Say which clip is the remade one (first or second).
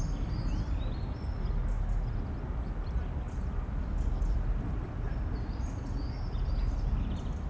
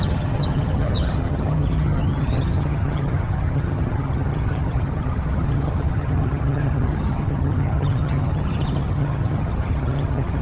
second